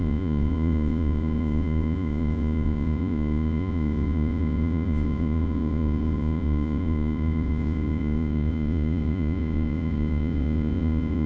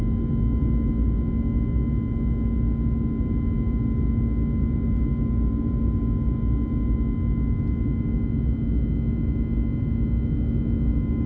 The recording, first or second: second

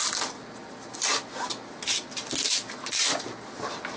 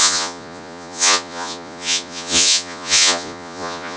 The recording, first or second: first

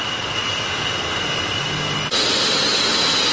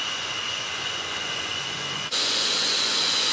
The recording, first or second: first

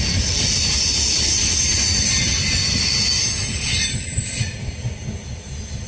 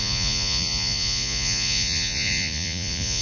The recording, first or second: first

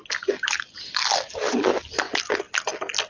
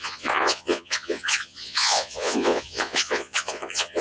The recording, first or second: first